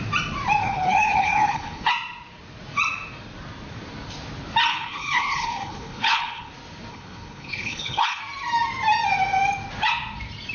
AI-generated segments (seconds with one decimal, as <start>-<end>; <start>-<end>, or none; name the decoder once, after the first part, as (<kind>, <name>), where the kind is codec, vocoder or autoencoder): 0.6-1.9 (codec, HILCodec); 4.7-6.5; 6.9-8.2